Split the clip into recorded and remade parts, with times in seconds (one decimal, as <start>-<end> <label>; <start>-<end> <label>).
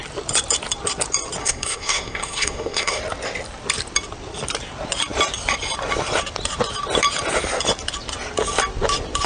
0.0-1.4 recorded; 1.4-3.0 remade; 3.0-9.3 recorded